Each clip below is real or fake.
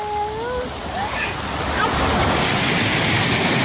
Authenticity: real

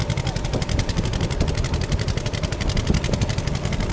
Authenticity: real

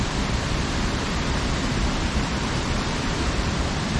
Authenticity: fake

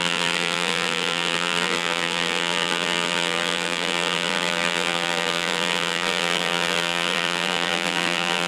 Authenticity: fake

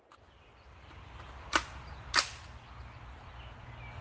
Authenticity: real